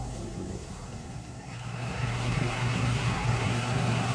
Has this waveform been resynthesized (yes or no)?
yes